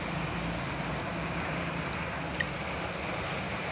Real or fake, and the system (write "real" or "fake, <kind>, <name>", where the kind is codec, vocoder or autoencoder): real